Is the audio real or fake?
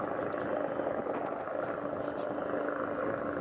real